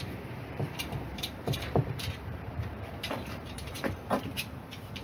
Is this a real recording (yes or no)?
no